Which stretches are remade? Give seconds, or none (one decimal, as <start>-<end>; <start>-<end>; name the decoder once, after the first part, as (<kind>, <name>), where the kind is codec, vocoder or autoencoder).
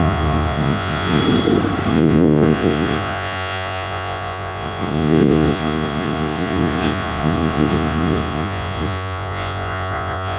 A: 0.0-1.2 (vocoder, Vocos); 1.9-10.4